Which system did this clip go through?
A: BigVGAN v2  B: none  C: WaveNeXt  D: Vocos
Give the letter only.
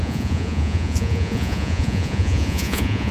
D